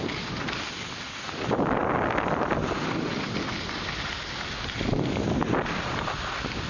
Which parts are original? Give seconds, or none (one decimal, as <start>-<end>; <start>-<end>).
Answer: 0.0-6.7

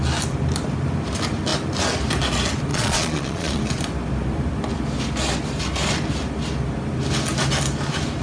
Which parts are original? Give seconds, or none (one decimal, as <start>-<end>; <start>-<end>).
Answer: 0.0-2.7; 3.6-8.2

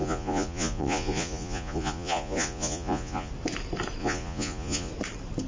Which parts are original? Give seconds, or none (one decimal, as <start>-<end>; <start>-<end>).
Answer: 3.3-4.0; 4.9-5.5

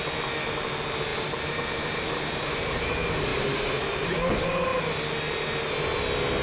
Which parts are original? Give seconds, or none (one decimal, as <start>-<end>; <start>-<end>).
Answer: 0.0-1.1; 2.8-3.3; 4.2-6.4

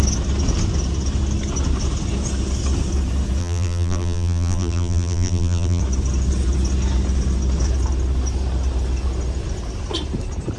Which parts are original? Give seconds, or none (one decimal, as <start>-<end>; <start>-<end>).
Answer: 0.0-3.4; 5.8-10.6